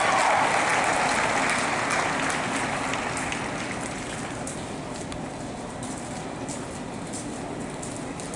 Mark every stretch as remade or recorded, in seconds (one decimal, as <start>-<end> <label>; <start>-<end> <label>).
0.0-8.4 recorded